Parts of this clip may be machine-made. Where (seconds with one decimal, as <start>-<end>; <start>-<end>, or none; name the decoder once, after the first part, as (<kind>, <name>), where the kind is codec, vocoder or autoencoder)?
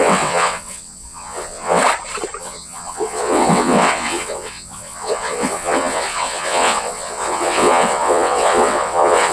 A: 0.0-1.8 (vocoder, WaveNeXt); 2.4-9.3